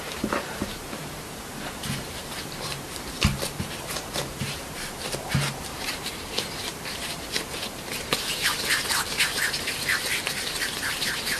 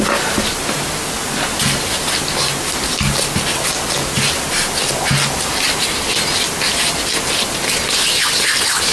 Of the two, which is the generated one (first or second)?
first